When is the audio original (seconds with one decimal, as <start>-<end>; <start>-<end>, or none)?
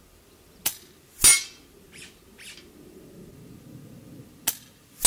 0.0-5.1